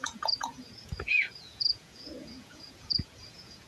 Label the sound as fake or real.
fake